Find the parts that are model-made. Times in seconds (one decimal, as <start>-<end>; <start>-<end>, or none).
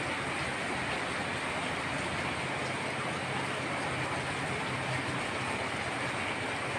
none